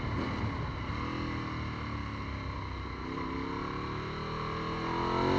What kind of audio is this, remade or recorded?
recorded